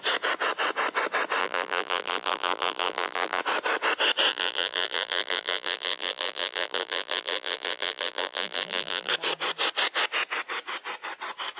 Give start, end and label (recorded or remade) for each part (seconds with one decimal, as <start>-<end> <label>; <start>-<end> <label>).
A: 0.0-1.4 recorded; 1.4-3.4 remade; 3.4-4.3 recorded; 4.3-9.1 remade; 9.1-11.6 recorded